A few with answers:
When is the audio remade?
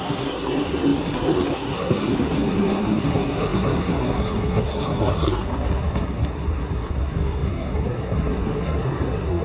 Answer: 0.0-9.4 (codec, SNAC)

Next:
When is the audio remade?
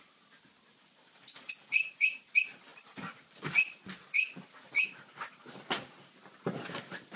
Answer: none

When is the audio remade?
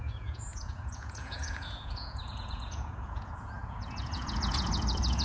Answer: 0.0-5.2 (vocoder, Vocos)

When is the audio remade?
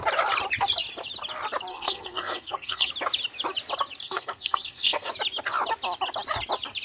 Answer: 1.7-2.9 (codec, SNAC); 4.0-5.1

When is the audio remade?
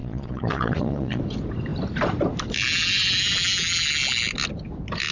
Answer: 0.0-1.2 (vocoder, Vocos)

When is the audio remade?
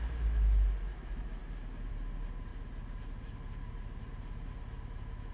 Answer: none